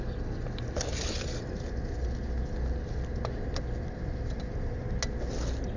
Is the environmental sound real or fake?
real